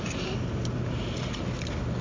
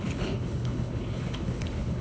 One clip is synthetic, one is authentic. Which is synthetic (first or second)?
second